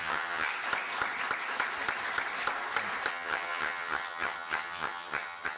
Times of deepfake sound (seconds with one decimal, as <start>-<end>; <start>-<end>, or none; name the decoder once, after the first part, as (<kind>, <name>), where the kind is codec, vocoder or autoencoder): 0.0-0.5 (vocoder, HiFi-GAN); 3.1-5.6